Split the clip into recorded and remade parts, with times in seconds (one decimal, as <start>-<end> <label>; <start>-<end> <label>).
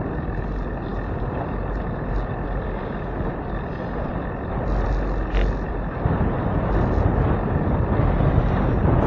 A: 0.0-9.1 recorded